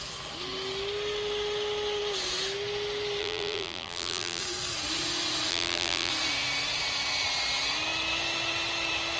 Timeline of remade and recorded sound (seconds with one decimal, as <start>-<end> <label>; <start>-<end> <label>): 0.0-3.2 recorded; 3.2-4.4 remade; 4.4-5.5 recorded; 5.5-6.1 remade; 6.1-9.2 recorded